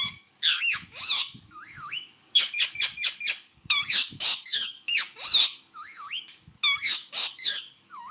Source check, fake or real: fake